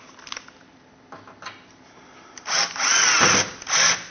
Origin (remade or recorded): recorded